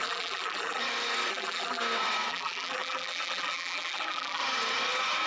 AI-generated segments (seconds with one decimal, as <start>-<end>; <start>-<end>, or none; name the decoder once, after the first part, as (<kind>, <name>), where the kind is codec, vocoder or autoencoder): 0.0-0.8 (vocoder, BigVGAN v2); 1.3-1.8; 2.3-4.4